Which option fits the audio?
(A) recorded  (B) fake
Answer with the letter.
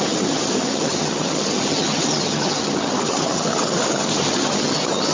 B